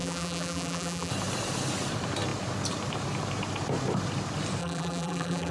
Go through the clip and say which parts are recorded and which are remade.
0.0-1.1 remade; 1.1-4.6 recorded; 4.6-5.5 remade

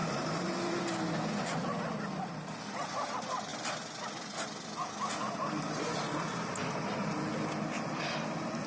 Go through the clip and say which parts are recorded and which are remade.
0.0-0.8 remade; 0.8-8.7 recorded

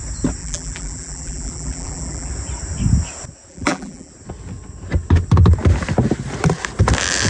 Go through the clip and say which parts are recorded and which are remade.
0.0-0.4 recorded; 0.4-2.3 remade; 2.3-3.5 recorded; 3.5-4.1 remade; 4.1-7.3 recorded

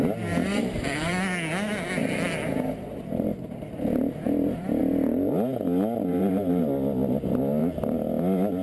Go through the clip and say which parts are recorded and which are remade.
0.0-0.6 recorded; 0.6-1.1 remade; 1.1-2.0 recorded; 2.0-4.8 remade; 4.8-6.1 recorded; 6.1-6.6 remade; 6.6-7.6 recorded; 7.6-8.1 remade; 8.1-8.6 recorded

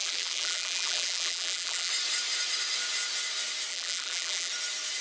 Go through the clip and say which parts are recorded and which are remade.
0.0-1.9 remade; 1.9-3.7 recorded; 3.7-4.5 remade; 4.5-5.0 recorded